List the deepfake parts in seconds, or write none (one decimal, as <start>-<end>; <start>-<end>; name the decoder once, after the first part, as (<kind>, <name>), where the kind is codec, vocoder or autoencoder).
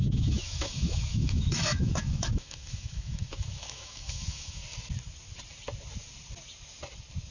0.0-4.6 (autoencoder, DAC-VAE)